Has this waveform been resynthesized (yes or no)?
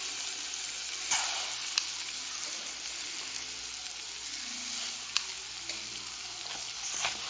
no